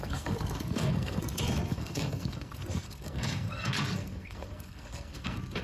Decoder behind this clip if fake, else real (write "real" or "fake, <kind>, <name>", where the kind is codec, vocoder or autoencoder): fake, codec, SNAC